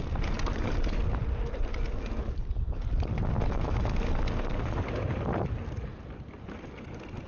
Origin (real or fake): real